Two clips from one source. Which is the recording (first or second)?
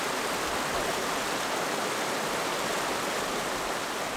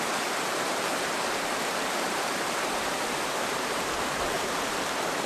first